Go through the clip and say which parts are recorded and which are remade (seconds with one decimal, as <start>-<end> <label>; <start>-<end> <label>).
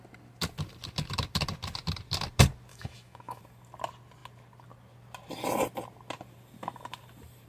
0.0-2.7 recorded; 2.7-3.4 remade; 3.4-7.5 recorded